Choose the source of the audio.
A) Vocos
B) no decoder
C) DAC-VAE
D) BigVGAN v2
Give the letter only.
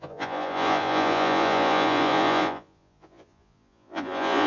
A